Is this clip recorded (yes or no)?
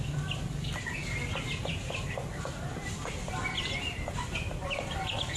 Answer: yes